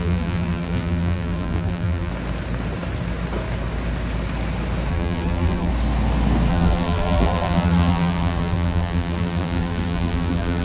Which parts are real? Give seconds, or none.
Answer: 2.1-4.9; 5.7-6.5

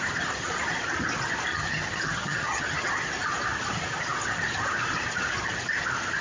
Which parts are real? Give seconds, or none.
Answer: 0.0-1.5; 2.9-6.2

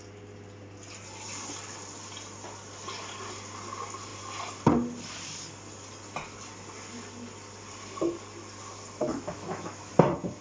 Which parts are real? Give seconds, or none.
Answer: 0.0-9.0; 9.9-10.4

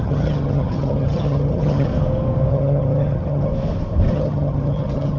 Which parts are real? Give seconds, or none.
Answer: 1.9-2.5; 3.5-4.1

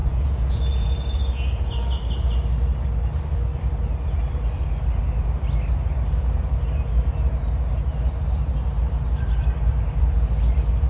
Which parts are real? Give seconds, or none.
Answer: 1.7-10.9

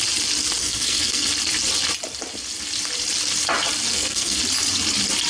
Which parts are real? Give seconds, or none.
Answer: 0.0-0.6; 1.3-3.9; 4.4-5.3